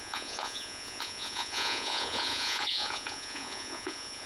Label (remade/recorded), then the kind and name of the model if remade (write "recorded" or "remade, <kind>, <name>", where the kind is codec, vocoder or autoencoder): remade, vocoder, Vocos